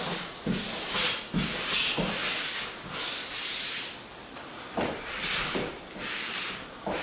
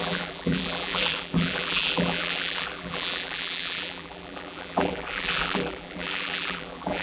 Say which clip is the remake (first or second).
second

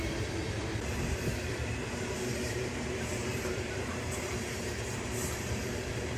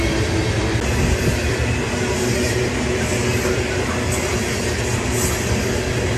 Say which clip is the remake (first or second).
first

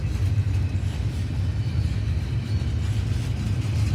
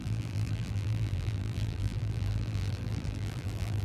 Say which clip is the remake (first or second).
second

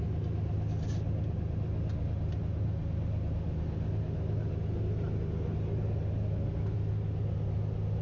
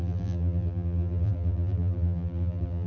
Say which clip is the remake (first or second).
second